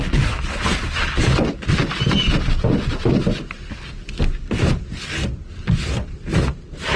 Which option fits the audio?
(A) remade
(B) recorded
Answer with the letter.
B